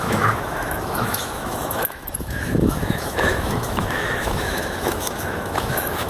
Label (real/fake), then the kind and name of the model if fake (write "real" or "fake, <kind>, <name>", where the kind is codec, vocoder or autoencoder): fake, autoencoder, DAC-VAE